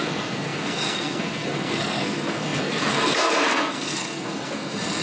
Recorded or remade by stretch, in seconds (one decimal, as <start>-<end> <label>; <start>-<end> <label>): 0.0-5.0 remade